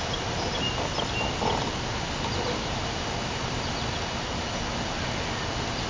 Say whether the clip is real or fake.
real